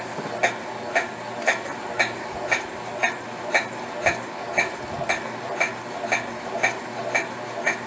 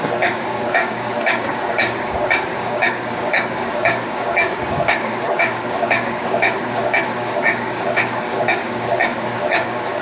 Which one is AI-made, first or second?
second